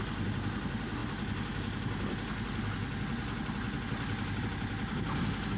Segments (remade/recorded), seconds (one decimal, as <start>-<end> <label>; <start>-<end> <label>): 0.0-5.6 recorded